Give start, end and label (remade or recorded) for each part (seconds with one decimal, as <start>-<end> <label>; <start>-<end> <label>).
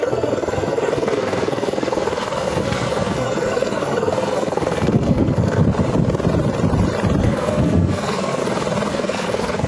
0.0-5.6 remade; 5.6-7.2 recorded; 7.2-8.4 remade; 8.4-8.9 recorded; 8.9-9.7 remade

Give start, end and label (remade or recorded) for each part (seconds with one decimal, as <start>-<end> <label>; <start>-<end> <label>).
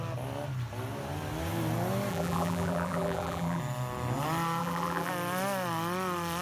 0.0-2.1 recorded; 2.1-3.6 remade; 3.6-4.6 recorded; 4.6-5.1 remade; 5.1-6.4 recorded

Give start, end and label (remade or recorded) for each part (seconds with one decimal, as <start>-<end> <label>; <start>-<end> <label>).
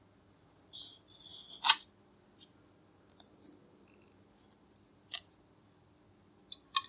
0.0-6.9 recorded